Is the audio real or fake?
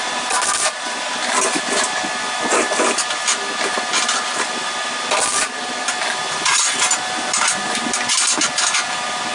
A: real